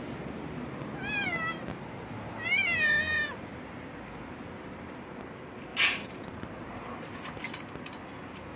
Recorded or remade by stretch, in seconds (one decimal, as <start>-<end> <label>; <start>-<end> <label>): 0.0-5.7 recorded; 5.7-7.3 remade; 7.3-8.6 recorded